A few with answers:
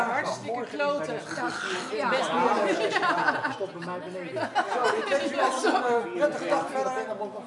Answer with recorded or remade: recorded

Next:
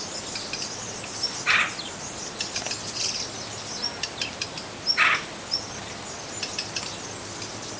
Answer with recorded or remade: recorded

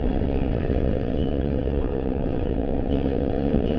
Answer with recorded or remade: remade